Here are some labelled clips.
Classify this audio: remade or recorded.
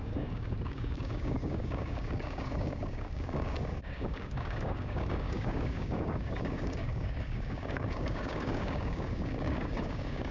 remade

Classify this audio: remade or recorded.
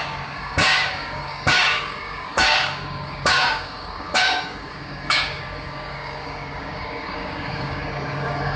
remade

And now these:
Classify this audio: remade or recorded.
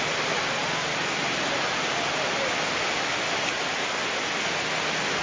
recorded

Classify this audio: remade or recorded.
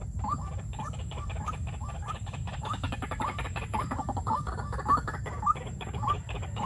remade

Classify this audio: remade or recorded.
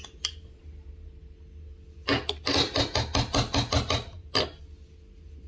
recorded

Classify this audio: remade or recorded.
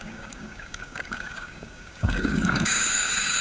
remade